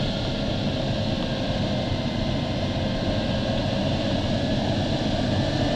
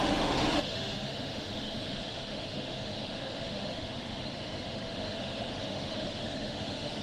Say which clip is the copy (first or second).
second